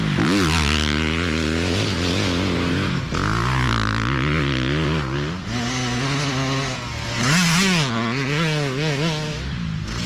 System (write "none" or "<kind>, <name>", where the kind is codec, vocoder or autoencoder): none